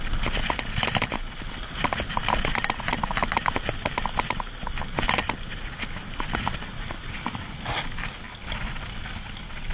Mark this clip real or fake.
real